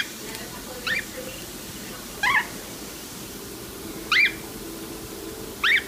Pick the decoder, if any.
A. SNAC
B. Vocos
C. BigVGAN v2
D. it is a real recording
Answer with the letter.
D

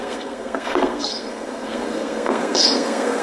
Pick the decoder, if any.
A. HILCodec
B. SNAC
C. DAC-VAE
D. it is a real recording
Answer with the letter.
B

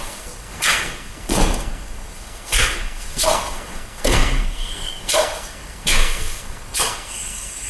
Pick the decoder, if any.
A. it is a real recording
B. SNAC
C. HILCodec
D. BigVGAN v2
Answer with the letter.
B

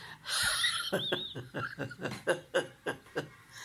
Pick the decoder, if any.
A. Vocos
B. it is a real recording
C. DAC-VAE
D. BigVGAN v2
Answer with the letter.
B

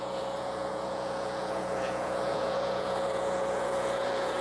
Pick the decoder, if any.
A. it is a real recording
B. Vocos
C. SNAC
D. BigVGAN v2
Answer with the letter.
B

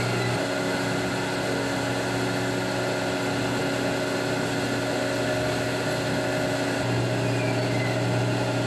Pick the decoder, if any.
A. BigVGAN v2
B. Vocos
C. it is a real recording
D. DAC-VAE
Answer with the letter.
C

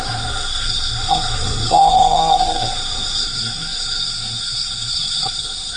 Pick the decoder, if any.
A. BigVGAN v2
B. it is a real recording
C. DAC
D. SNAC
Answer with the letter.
D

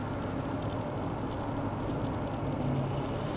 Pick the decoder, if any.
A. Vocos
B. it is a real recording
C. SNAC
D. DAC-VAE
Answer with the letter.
B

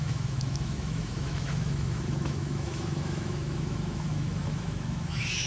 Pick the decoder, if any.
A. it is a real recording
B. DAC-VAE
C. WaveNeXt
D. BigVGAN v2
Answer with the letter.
B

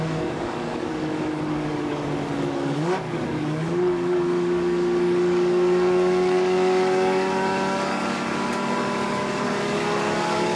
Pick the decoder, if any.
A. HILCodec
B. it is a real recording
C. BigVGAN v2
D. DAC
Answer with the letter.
D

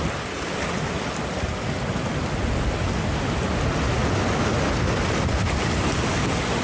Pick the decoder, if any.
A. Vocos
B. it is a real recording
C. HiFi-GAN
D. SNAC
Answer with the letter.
B